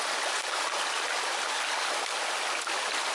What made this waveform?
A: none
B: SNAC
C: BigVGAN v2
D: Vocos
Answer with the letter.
A